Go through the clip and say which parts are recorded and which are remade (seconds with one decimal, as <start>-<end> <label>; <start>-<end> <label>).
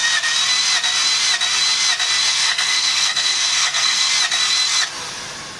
0.0-2.3 recorded; 2.3-4.1 remade; 4.1-5.6 recorded